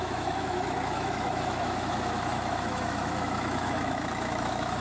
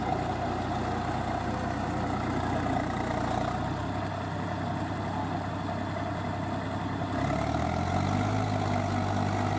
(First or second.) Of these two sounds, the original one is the second